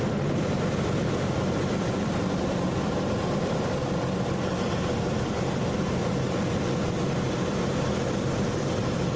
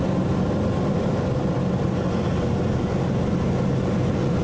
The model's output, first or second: first